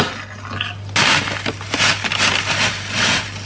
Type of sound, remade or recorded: recorded